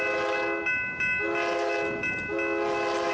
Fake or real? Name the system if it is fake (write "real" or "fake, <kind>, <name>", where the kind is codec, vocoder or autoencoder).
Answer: real